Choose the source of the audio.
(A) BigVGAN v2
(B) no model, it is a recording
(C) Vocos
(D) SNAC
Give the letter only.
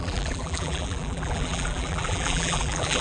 A